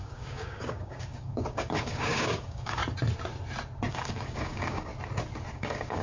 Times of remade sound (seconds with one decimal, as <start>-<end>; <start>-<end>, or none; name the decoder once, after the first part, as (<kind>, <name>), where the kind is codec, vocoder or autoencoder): 0.0-2.8 (codec, DAC); 3.9-4.9; 5.5-6.0